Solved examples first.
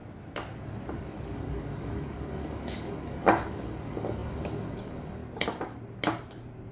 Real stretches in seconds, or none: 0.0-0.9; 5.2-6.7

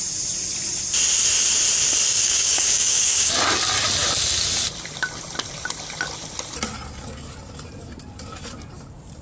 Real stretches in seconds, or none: 0.0-2.1; 3.3-9.2